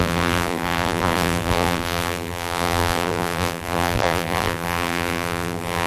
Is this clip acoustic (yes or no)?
no